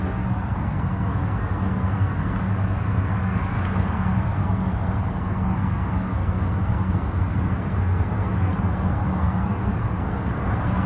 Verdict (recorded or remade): remade